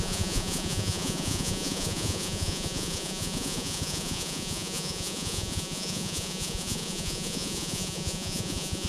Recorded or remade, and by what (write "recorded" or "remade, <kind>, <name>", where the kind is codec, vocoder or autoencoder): remade, vocoder, Vocos